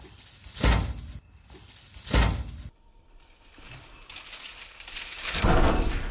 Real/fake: real